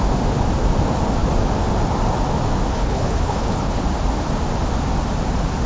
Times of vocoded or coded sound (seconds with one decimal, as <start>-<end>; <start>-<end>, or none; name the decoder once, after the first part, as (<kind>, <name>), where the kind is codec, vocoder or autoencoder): 2.7-3.8 (codec, HILCodec)